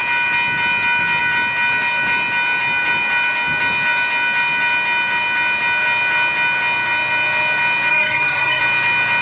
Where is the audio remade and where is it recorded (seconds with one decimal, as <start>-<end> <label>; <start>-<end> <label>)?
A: 0.0-7.9 recorded; 7.9-8.6 remade; 8.6-9.2 recorded